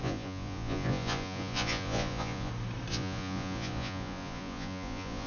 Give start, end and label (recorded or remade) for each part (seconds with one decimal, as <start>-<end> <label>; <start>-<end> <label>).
0.0-2.5 remade; 2.5-2.9 recorded; 2.9-5.3 remade